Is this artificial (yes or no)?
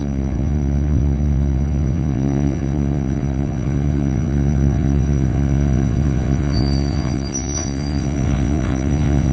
yes